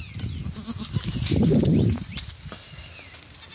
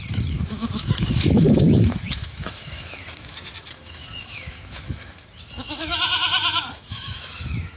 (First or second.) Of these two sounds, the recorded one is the first